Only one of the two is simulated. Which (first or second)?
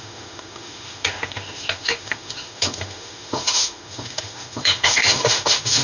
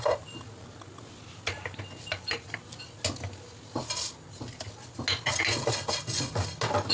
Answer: first